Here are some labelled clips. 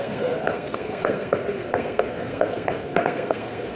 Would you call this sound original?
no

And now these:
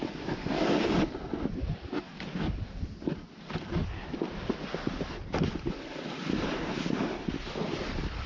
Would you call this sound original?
yes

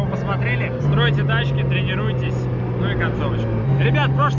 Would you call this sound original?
yes